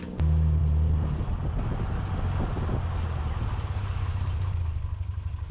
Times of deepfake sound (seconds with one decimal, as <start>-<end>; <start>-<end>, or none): 3.8-4.6